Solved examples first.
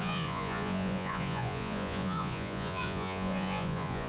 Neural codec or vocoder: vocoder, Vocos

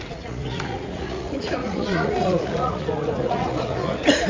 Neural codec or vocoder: vocoder, Vocos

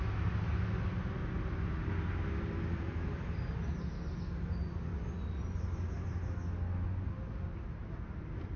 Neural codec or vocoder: none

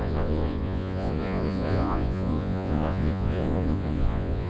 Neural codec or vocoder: vocoder, Vocos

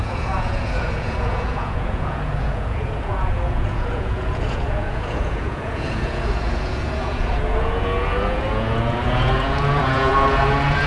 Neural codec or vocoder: vocoder, Vocos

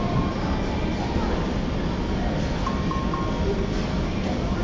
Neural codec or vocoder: none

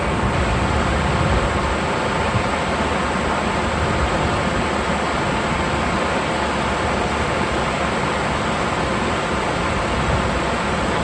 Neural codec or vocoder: none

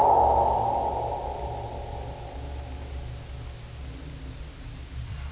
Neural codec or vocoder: none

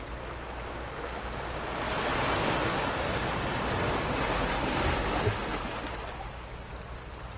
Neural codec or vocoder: none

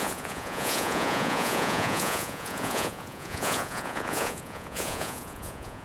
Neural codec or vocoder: vocoder, Vocos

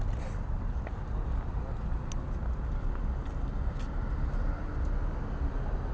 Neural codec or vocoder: none